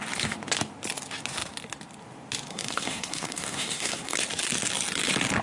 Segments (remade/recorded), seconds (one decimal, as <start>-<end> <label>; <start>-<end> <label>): 0.0-2.5 recorded; 2.5-4.2 remade; 4.2-5.4 recorded

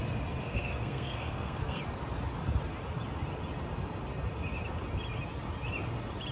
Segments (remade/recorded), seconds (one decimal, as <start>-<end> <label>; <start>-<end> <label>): 0.0-0.4 recorded; 0.4-1.8 remade; 1.8-6.3 recorded

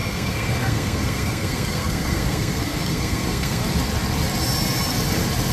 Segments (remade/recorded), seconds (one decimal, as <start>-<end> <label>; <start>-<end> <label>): 0.0-3.6 remade; 3.6-5.5 recorded

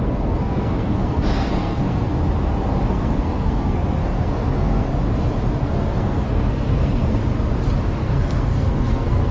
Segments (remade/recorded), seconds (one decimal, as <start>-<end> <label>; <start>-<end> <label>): 0.0-2.1 remade; 2.1-2.9 recorded; 2.9-4.9 remade; 4.9-5.6 recorded; 5.6-7.2 remade; 7.2-8.0 recorded; 8.0-9.3 remade

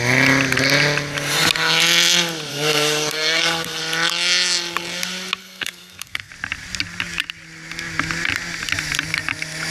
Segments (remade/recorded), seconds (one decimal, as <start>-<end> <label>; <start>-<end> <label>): 0.0-2.5 recorded; 2.5-3.8 remade; 3.8-5.4 recorded; 5.4-6.3 remade; 6.3-9.7 recorded